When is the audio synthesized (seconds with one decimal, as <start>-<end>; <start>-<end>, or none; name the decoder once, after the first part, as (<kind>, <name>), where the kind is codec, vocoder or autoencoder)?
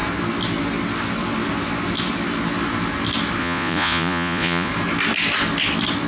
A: 3.4-4.7 (vocoder, Vocos)